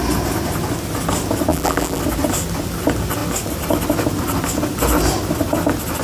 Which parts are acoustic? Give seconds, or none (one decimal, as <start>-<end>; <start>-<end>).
0.0-1.5; 2.0-6.0